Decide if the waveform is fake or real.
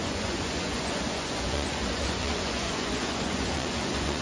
fake